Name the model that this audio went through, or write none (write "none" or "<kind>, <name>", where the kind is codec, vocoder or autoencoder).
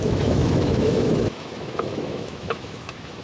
autoencoder, DAC-VAE